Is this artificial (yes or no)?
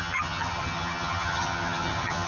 yes